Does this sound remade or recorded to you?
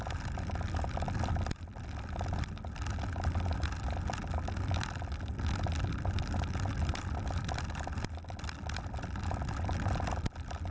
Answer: recorded